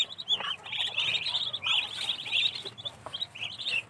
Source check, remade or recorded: recorded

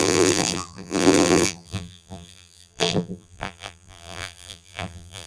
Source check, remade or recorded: remade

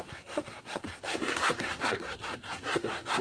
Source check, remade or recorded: remade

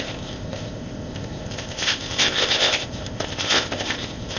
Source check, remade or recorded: remade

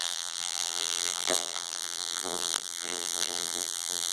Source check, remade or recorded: remade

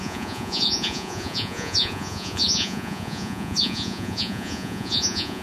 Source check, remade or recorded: remade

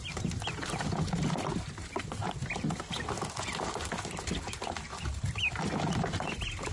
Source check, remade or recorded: recorded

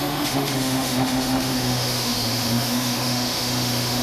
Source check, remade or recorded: remade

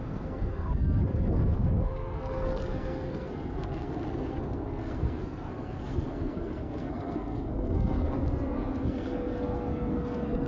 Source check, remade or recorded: remade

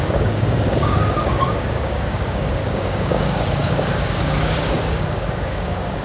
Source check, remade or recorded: remade